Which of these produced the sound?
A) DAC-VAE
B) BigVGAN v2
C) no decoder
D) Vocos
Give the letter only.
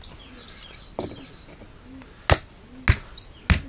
C